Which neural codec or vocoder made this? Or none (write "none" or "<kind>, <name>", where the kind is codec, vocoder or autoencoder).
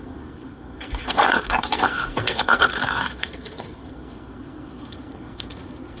codec, SNAC